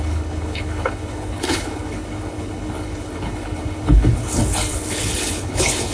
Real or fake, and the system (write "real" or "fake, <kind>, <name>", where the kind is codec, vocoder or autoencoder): fake, codec, HILCodec